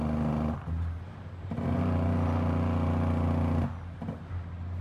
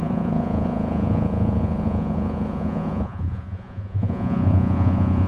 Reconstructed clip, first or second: second